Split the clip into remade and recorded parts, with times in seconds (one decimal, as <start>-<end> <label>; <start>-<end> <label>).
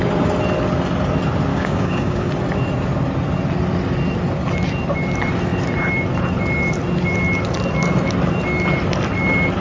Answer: 0.0-1.5 recorded; 1.5-2.3 remade; 2.3-9.6 recorded